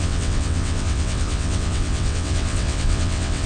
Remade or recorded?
remade